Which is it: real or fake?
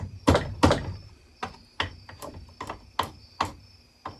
real